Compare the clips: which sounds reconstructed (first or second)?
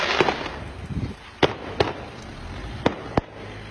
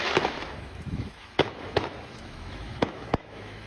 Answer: second